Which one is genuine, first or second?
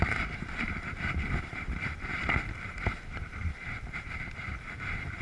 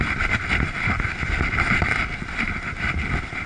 second